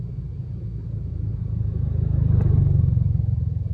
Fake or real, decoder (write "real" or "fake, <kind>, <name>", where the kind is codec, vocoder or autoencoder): fake, vocoder, Vocos